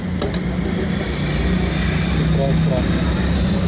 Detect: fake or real real